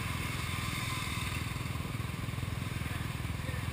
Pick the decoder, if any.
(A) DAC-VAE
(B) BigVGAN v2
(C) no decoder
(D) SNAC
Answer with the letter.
B